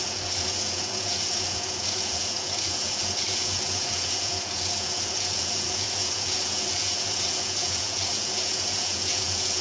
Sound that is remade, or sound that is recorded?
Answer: remade